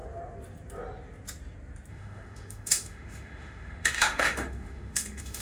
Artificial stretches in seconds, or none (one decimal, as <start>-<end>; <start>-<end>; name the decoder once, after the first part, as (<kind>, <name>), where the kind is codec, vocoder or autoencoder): 1.9-5.4 (autoencoder, DAC-VAE)